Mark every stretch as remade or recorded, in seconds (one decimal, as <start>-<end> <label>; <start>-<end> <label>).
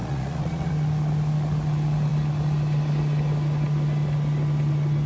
0.0-0.7 remade; 0.7-5.1 recorded